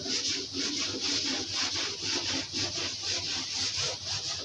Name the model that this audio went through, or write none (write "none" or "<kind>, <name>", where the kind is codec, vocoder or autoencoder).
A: none